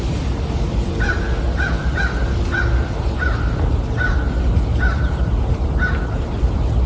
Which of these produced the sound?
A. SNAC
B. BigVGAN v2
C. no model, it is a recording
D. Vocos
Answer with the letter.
C